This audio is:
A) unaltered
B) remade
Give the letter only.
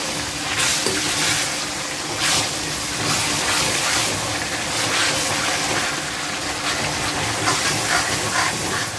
A